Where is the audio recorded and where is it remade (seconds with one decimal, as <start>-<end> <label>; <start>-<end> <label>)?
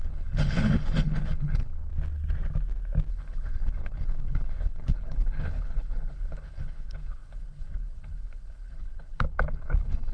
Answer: 0.0-1.9 remade; 1.9-3.1 recorded; 3.1-10.1 remade